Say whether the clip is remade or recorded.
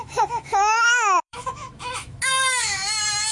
remade